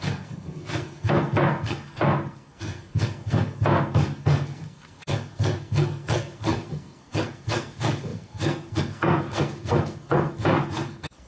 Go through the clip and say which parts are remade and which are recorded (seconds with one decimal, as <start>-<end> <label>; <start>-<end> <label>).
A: 0.0-11.3 remade